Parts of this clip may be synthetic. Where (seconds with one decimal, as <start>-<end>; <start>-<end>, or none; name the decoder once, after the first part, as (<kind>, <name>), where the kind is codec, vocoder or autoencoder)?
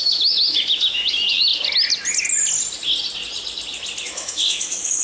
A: 0.0-1.5 (autoencoder, DAC-VAE); 4.0-5.0